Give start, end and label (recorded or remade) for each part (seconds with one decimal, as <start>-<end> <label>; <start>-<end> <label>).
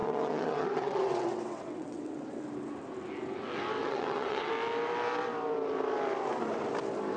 0.0-2.4 remade; 2.4-3.8 recorded; 3.8-4.5 remade; 4.5-7.2 recorded